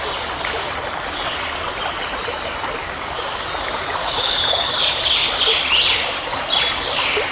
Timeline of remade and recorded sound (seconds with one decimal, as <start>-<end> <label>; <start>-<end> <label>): 0.0-2.8 recorded; 2.8-3.4 remade; 3.4-4.0 recorded; 4.0-4.7 remade; 4.7-7.3 recorded